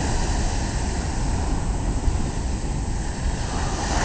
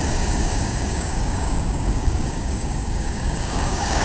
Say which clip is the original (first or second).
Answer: first